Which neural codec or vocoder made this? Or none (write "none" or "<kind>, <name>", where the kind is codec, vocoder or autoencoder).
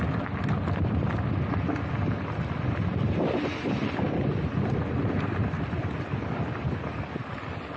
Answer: none